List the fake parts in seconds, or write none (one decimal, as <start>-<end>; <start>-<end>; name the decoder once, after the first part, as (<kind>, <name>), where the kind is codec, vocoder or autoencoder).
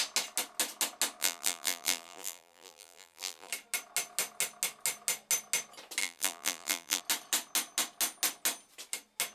1.2-3.5 (vocoder, BigVGAN v2); 6.0-7.0